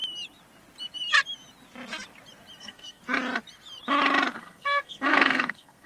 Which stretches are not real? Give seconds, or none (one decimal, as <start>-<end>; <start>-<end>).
2.6-3.0; 4.4-5.9

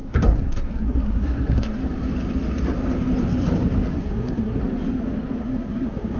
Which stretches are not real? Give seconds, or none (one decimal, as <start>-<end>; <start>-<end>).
0.0-1.8; 3.9-4.6; 5.4-6.2

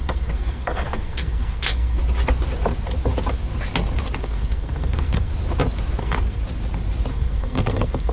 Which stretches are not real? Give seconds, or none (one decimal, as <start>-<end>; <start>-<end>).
0.0-2.0; 4.2-5.3; 6.0-6.4; 7.1-8.1

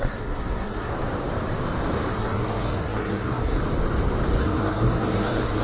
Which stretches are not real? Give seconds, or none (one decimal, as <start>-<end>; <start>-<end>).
0.0-0.9; 2.1-3.6; 4.4-5.6

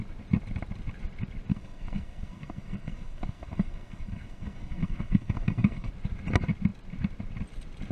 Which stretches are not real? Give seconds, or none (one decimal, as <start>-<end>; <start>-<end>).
1.5-5.9